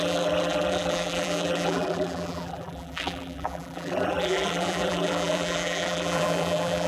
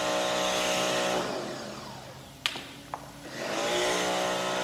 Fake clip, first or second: first